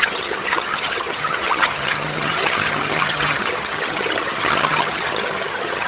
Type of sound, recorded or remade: remade